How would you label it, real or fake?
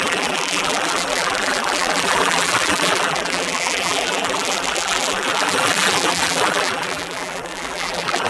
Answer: fake